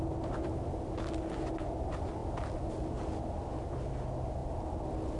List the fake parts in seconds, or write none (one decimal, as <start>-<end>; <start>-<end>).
none